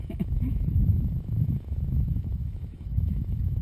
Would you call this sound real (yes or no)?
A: no